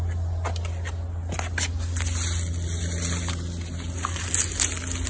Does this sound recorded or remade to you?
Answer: recorded